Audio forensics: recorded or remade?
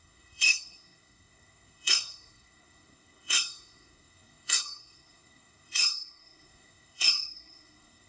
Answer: remade